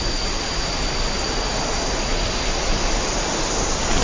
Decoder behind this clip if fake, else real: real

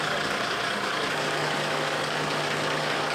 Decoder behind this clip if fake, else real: fake, codec, DAC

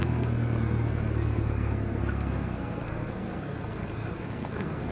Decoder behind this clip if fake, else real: fake, codec, SNAC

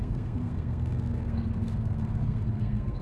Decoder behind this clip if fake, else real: fake, codec, SNAC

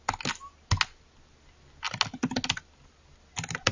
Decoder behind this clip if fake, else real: real